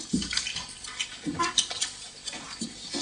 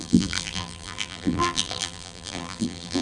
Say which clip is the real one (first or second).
first